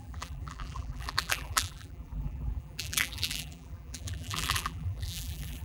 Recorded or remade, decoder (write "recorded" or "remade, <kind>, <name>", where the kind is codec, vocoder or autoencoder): remade, vocoder, BigVGAN v2